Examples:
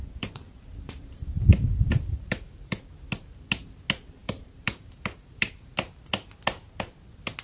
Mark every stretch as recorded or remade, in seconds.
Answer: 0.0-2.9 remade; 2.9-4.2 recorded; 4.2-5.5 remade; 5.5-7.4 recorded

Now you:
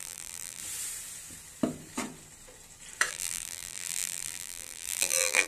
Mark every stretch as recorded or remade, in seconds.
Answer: 0.0-0.6 remade; 0.6-3.1 recorded; 3.1-5.5 remade

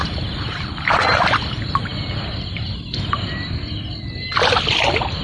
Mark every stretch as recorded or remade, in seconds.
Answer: 0.0-5.2 recorded

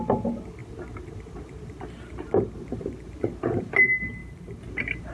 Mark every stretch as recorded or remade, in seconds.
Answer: 0.0-0.6 recorded; 0.6-3.7 remade; 3.7-4.2 recorded; 4.2-5.1 remade

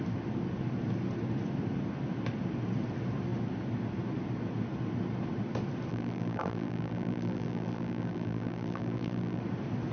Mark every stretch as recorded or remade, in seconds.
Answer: 0.0-5.9 recorded; 5.9-9.4 remade; 9.4-9.9 recorded

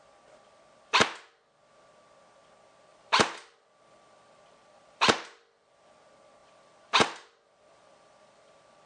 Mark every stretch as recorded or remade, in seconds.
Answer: 0.0-2.9 recorded; 2.9-5.9 remade; 5.9-6.4 recorded; 6.4-8.9 remade

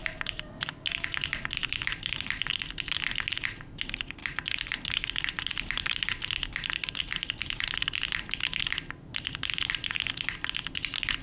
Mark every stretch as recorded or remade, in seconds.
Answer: 0.0-4.2 recorded; 4.2-8.1 remade; 8.1-11.2 recorded

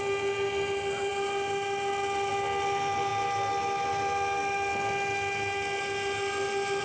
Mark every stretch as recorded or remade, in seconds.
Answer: 0.0-6.8 recorded